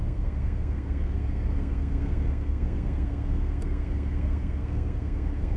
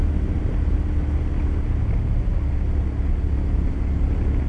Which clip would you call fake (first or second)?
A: first